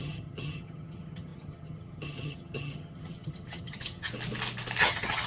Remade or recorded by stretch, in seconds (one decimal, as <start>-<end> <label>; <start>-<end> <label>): 0.0-4.1 remade; 4.1-4.8 recorded; 4.8-5.3 remade